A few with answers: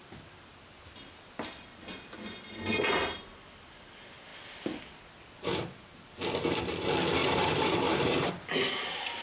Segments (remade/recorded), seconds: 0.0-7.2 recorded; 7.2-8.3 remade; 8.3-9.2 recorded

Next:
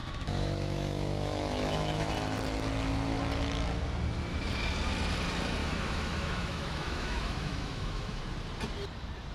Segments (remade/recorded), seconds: 0.0-2.1 remade; 2.1-5.6 recorded; 5.6-8.2 remade; 8.2-9.3 recorded

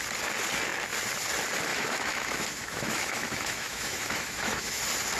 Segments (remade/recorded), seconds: 0.0-1.7 recorded; 1.7-4.8 remade; 4.8-5.2 recorded

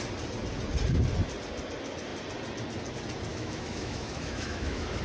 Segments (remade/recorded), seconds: 0.0-3.3 recorded; 3.3-5.0 remade

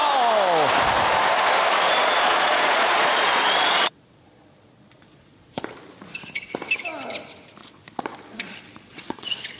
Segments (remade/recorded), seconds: 0.0-2.0 recorded; 2.0-5.7 remade; 5.7-7.6 recorded; 7.6-9.6 remade

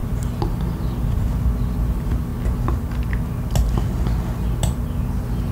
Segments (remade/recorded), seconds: 0.0-1.8 recorded; 1.8-2.3 remade; 2.3-5.1 recorded; 5.1-5.5 remade

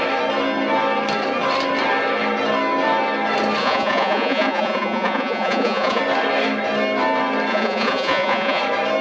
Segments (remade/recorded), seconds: 0.0-3.6 recorded; 3.6-6.0 remade; 6.0-7.5 recorded; 7.5-8.6 remade; 8.6-9.0 recorded